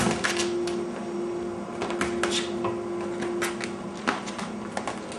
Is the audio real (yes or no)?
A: yes